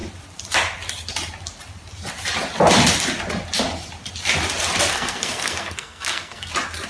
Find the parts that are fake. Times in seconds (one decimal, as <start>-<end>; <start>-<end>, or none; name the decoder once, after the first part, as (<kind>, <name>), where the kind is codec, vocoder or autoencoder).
4.9-6.5 (codec, SNAC)